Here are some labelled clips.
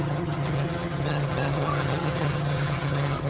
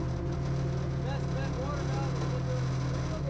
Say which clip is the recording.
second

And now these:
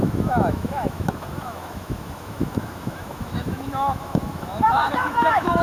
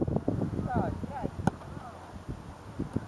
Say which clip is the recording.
second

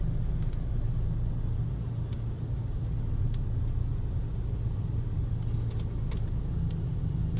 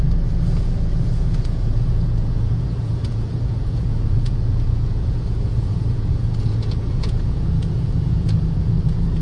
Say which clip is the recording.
first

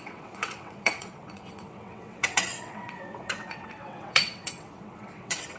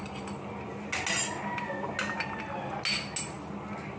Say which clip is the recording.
second